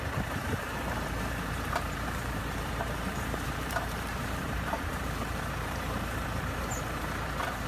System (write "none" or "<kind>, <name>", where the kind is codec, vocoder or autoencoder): vocoder, BigVGAN v2